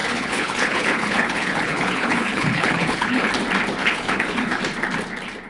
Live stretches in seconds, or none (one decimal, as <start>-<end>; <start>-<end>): 3.3-3.8; 4.6-5.5